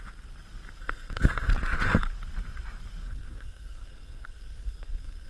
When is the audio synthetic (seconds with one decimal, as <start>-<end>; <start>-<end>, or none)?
0.8-1.5; 3.0-5.3